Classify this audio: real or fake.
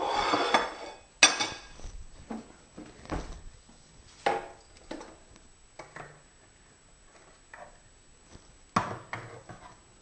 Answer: real